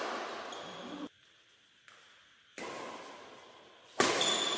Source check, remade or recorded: recorded